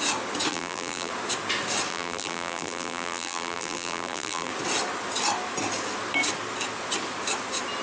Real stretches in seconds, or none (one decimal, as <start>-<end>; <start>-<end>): 0.0-0.5; 1.1-1.9; 4.5-7.8